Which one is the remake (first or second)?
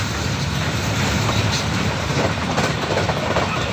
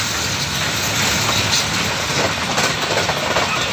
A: first